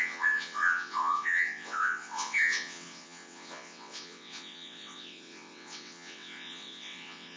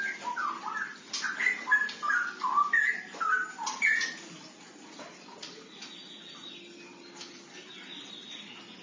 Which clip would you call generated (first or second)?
first